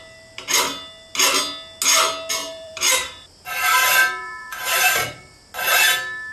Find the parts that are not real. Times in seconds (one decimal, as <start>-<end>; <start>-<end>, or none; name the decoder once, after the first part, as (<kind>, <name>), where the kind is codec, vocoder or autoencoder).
2.4-5.4 (vocoder, BigVGAN v2)